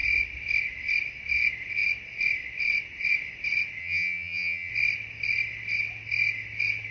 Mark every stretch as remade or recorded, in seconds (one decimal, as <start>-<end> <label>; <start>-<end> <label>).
0.0-3.8 recorded; 3.8-4.7 remade; 4.7-6.9 recorded